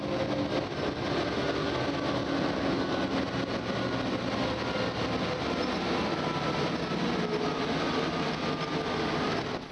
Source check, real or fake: real